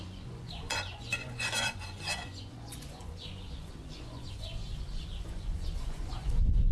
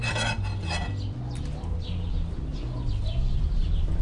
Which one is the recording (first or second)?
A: second